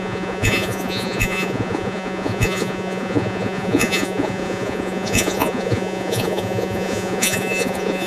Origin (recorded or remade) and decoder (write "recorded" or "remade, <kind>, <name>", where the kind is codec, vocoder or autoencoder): remade, vocoder, Vocos